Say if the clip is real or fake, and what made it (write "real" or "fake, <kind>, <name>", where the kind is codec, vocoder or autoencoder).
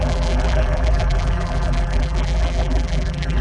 fake, vocoder, BigVGAN v2